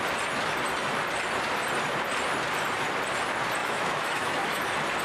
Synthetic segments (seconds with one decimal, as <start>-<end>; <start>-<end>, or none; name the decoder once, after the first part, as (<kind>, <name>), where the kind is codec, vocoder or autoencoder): 3.6-4.6 (autoencoder, DAC-VAE)